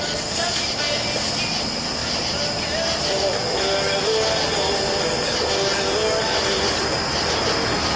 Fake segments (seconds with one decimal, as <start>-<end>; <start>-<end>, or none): none